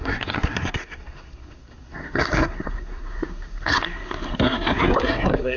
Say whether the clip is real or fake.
fake